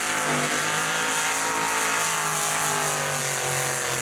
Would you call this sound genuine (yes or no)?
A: yes